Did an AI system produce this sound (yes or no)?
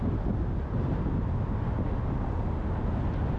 no